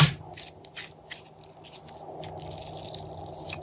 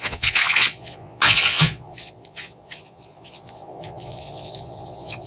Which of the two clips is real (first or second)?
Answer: first